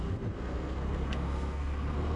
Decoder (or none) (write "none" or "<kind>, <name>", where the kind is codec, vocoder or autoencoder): codec, SNAC